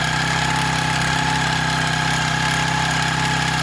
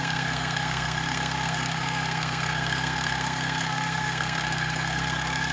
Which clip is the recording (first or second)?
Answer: first